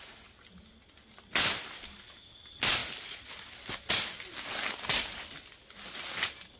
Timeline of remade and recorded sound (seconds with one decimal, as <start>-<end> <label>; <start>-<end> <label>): 0.0-6.6 recorded

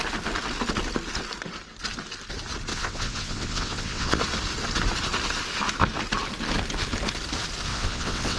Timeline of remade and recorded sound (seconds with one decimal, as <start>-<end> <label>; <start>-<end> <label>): 0.0-2.7 recorded; 2.7-4.2 remade; 4.2-7.7 recorded; 7.7-8.4 remade

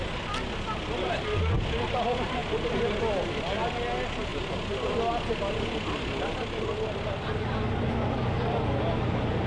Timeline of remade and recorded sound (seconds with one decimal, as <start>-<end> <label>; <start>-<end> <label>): 0.0-9.5 recorded

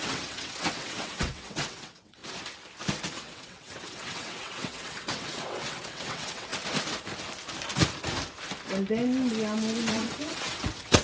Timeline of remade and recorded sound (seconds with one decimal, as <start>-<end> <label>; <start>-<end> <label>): 0.0-2.2 remade; 2.2-3.1 recorded; 3.1-6.5 remade; 6.5-9.9 recorded; 9.9-11.0 remade